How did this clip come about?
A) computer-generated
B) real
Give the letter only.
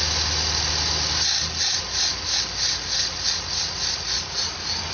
B